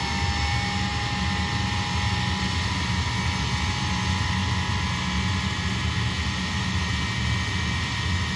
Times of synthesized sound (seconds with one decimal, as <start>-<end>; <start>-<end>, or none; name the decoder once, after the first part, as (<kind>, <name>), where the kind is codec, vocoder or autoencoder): none